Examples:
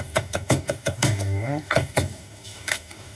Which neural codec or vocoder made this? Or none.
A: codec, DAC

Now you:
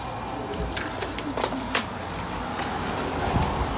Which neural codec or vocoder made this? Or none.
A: none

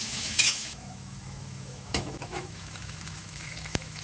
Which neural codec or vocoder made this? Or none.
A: autoencoder, DAC-VAE